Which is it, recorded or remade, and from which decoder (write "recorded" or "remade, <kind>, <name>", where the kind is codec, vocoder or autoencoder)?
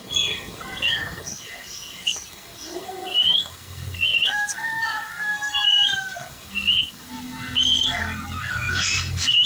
remade, codec, SNAC